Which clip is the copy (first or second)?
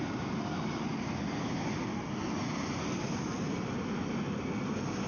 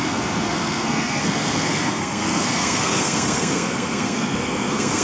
second